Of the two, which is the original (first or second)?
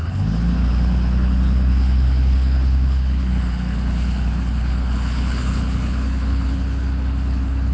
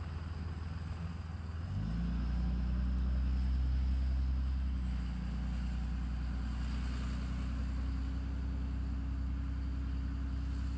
second